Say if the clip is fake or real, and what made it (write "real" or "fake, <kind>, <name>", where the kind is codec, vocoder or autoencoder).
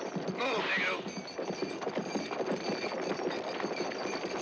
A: real